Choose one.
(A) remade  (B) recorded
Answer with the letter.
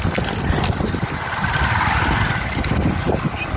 A